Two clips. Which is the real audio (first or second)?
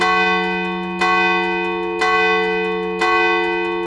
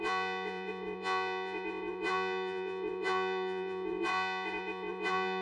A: first